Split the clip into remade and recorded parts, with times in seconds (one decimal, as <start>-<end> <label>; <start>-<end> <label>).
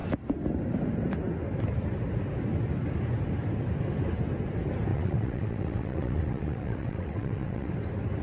0.0-4.9 recorded; 4.9-7.7 remade; 7.7-8.2 recorded